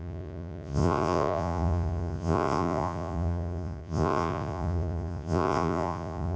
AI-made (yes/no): yes